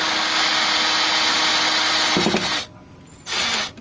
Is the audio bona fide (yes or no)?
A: yes